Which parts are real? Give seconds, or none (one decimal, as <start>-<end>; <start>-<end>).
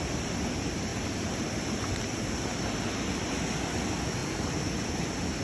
0.0-5.4